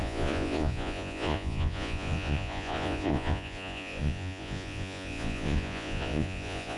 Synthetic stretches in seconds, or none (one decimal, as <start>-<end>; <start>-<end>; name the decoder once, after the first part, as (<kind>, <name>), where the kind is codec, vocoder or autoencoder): 0.0-6.8 (vocoder, Vocos)